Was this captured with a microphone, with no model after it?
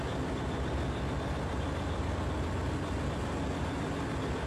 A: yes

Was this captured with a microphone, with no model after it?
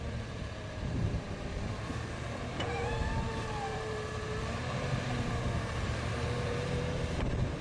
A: no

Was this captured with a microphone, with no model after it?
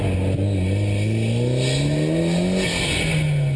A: yes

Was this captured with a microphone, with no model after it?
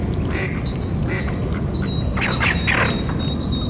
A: yes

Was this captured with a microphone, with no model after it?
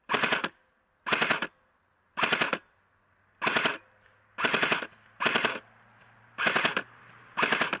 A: yes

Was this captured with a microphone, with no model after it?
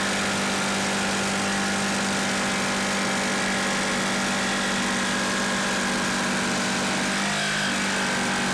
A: yes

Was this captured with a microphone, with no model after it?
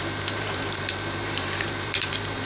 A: no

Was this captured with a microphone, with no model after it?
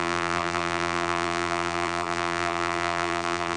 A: no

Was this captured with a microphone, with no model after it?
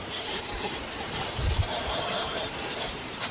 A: no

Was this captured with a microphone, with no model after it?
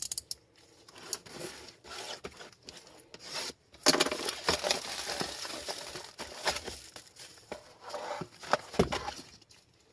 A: yes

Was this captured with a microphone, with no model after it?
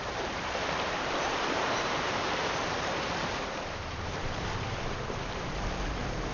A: no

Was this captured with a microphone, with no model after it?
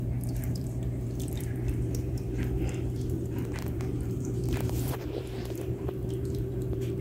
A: no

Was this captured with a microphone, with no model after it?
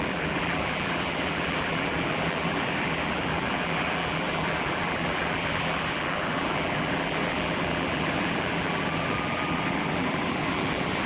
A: no